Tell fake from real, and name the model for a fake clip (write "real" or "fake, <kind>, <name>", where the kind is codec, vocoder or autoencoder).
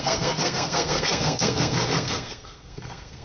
fake, codec, SNAC